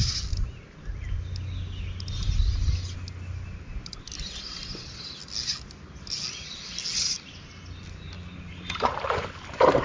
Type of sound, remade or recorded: recorded